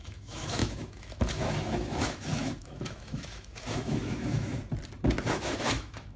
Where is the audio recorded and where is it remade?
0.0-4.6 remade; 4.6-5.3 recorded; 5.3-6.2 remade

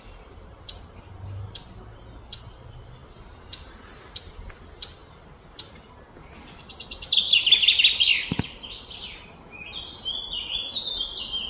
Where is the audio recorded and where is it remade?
0.0-11.5 recorded

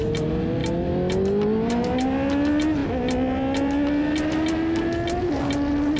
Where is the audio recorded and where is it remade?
0.0-6.0 recorded